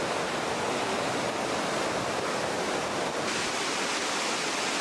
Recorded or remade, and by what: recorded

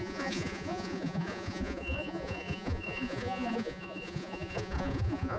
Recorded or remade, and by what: remade, vocoder, Vocos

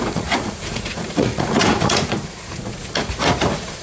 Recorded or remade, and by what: remade, vocoder, Vocos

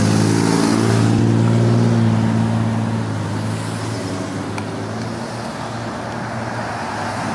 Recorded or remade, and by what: recorded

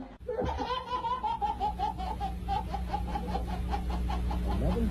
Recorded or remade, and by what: recorded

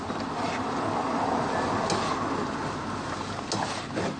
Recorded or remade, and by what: recorded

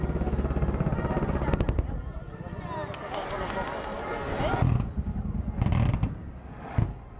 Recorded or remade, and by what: recorded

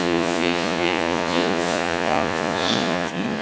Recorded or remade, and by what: remade, vocoder, Vocos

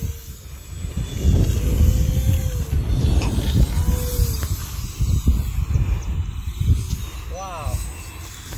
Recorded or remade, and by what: recorded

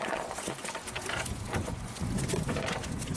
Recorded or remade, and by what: remade, vocoder, Vocos